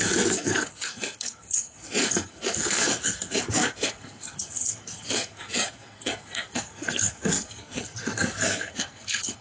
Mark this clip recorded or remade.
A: remade